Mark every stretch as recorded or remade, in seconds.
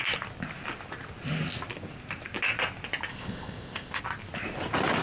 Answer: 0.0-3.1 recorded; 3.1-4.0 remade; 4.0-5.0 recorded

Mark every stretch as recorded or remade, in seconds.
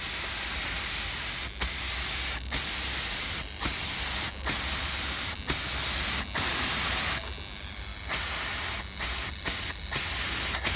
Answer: 0.0-10.8 recorded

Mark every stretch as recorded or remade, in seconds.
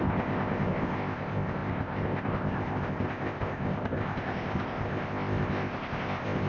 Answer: 0.0-6.5 remade